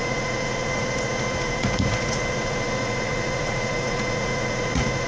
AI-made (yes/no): yes